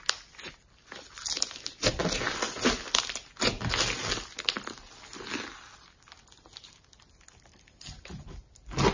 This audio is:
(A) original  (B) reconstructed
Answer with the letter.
A